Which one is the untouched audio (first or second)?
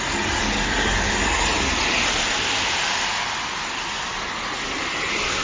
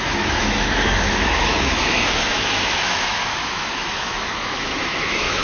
first